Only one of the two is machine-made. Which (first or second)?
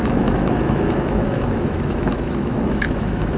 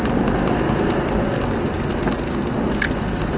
first